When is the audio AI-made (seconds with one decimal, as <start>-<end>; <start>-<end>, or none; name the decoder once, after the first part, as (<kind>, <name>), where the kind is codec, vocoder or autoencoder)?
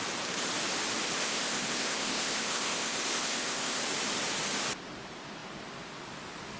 1.2-3.8 (codec, ZipCodec)